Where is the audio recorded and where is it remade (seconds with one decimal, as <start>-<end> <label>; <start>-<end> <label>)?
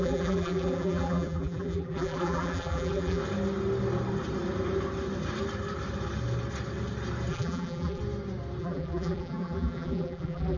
0.0-3.2 remade; 3.2-7.3 recorded; 7.3-8.0 remade; 8.0-8.6 recorded; 8.6-10.6 remade